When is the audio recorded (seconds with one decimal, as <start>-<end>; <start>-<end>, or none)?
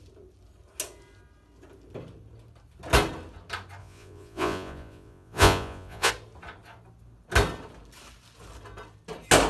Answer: 0.0-3.8; 6.1-9.5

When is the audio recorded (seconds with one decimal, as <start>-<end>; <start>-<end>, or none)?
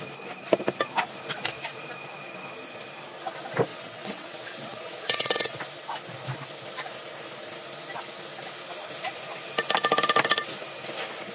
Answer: 0.0-3.7; 5.6-11.3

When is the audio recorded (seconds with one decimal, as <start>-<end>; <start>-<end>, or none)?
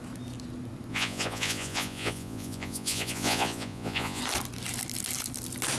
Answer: 0.0-0.9; 4.2-5.8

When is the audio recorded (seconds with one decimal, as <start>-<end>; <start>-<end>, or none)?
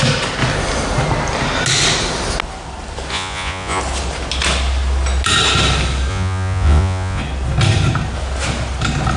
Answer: 0.0-3.1; 3.8-6.1; 7.2-9.2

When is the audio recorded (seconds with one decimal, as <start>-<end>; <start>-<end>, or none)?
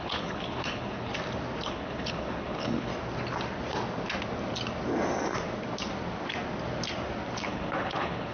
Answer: 1.1-1.7; 2.9-7.4